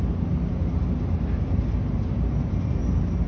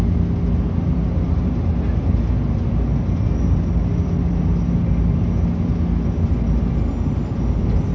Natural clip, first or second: second